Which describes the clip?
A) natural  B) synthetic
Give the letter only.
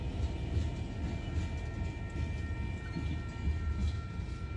A